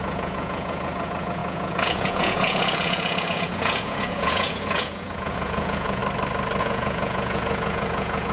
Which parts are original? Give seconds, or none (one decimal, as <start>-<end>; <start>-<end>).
6.0-6.6